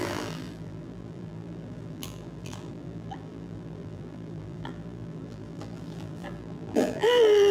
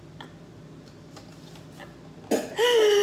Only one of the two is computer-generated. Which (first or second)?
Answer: first